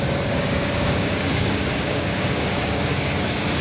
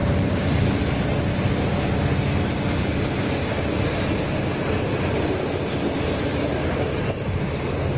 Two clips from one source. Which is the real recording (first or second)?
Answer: second